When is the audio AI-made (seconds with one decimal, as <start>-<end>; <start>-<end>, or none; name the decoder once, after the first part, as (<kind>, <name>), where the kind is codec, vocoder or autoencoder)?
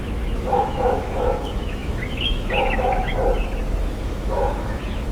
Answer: 0.0-3.1 (autoencoder, DAC-VAE); 3.8-5.1